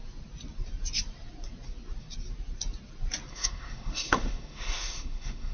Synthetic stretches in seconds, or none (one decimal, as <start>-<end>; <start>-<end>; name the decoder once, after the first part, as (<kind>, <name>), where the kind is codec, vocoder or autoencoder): 3.3-5.5 (autoencoder, DAC-VAE)